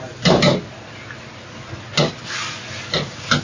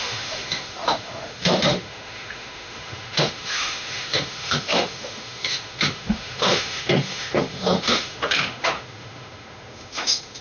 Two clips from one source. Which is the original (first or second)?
first